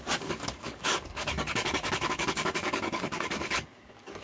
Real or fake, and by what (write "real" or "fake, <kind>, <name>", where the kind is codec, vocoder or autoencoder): fake, codec, DAC